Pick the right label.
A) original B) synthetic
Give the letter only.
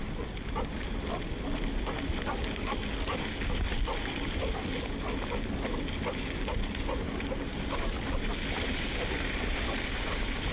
A